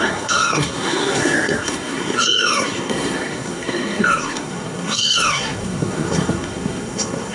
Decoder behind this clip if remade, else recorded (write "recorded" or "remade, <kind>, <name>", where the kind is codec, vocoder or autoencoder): remade, codec, SNAC